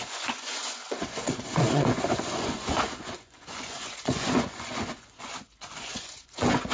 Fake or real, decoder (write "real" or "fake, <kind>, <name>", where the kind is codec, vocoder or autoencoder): fake, vocoder, Vocos